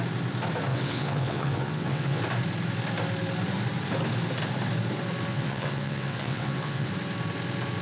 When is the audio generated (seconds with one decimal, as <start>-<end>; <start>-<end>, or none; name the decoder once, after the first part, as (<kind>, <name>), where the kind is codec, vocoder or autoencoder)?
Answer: 0.7-2.2 (vocoder, WaveNeXt); 5.3-6.9